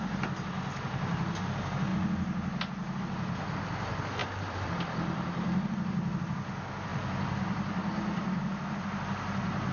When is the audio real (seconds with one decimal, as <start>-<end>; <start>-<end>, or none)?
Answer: 0.0-4.2; 6.2-6.9; 8.8-9.7